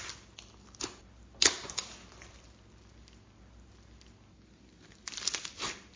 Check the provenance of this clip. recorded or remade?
recorded